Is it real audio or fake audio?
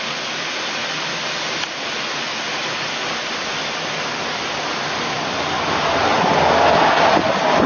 real